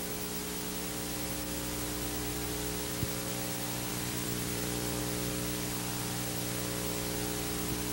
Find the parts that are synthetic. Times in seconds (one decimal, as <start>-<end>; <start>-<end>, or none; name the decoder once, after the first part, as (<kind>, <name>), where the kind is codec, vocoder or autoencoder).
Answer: 3.9-5.0 (vocoder, BigVGAN v2)